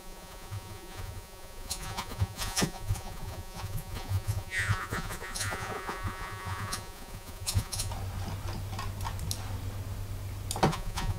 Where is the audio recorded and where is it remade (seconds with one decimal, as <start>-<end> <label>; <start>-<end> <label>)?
0.0-7.9 remade; 7.9-10.7 recorded; 10.7-11.2 remade